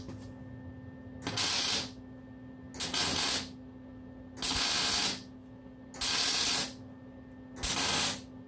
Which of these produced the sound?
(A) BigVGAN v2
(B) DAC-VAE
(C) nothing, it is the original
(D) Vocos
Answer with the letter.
C